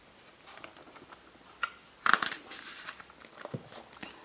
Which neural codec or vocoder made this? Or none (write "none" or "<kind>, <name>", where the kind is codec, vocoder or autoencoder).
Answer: none